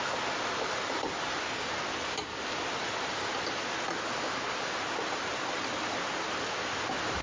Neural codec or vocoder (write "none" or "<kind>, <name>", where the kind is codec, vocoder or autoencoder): none